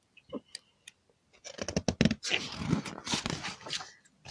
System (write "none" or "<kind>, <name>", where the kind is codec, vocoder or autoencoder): none